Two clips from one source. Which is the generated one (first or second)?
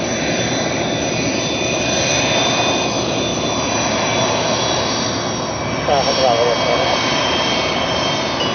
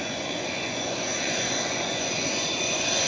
second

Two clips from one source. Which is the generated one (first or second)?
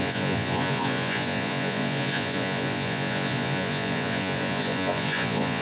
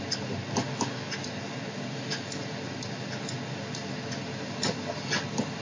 first